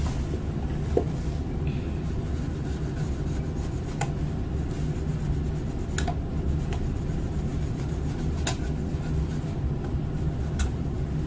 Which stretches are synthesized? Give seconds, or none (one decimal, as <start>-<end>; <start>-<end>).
none